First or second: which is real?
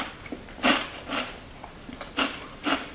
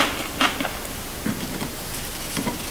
second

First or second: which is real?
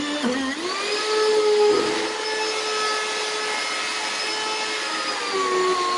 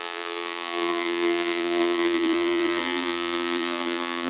first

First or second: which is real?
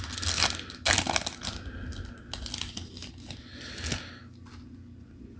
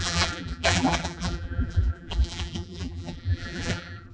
first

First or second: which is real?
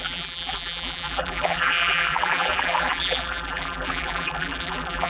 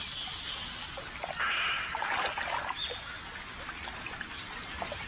second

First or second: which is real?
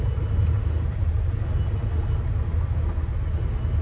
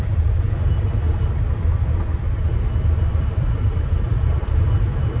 first